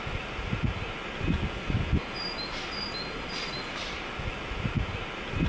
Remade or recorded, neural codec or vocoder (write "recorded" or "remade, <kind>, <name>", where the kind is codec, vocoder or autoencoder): recorded